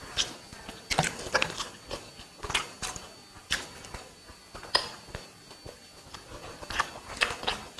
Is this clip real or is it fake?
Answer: real